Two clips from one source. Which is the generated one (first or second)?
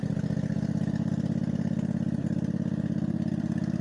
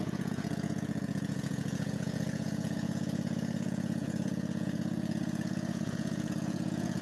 second